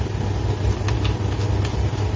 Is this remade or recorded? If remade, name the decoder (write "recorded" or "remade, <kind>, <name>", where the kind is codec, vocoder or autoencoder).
recorded